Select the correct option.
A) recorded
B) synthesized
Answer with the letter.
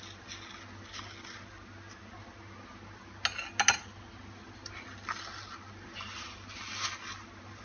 A